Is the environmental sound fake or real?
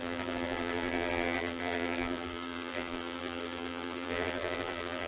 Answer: fake